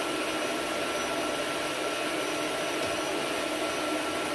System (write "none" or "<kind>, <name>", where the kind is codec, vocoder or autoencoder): none